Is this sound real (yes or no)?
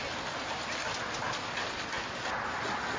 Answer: yes